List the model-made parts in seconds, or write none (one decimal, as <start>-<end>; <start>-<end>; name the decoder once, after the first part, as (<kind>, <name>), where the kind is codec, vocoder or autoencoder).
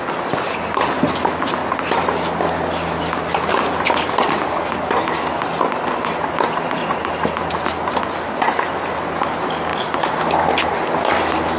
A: none